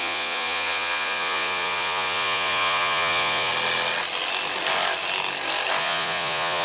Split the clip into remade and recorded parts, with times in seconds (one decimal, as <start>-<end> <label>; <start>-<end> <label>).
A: 0.0-3.5 remade; 3.5-5.8 recorded; 5.8-6.6 remade